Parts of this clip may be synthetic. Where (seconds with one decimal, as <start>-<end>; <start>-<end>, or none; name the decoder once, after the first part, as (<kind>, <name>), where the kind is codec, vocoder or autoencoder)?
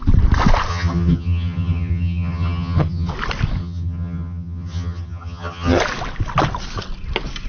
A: 0.7-3.1 (vocoder, HiFi-GAN); 3.6-5.8